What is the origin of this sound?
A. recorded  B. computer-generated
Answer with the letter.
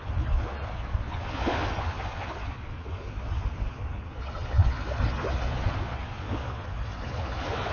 B